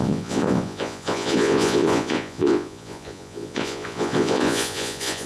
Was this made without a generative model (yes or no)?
no